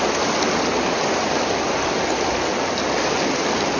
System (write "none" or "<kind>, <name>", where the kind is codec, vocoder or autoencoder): none